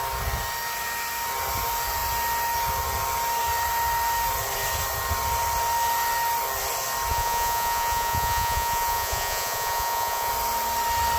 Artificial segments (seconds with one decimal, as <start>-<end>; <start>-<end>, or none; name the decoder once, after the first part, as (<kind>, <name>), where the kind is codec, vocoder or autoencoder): 7.1-10.3 (vocoder, Vocos)